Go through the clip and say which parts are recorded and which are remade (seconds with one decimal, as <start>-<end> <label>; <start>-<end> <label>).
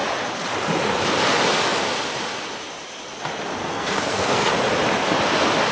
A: 0.0-3.6 recorded; 3.6-4.5 remade; 4.5-5.7 recorded